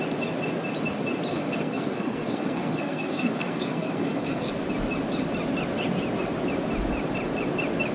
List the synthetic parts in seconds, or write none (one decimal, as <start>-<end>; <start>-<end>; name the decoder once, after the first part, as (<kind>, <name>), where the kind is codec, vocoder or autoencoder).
1.3-4.5 (codec, SNAC)